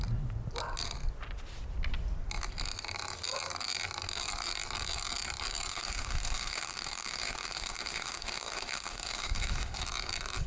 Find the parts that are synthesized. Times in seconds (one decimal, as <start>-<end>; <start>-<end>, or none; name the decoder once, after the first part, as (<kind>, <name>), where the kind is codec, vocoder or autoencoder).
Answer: 5.7-9.8 (autoencoder, DAC-VAE)